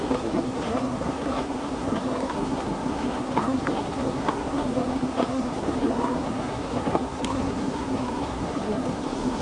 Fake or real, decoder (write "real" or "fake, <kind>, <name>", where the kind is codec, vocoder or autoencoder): fake, codec, SNAC